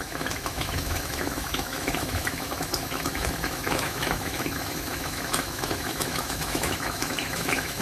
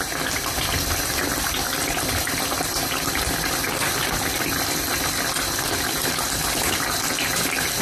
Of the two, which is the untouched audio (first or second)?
second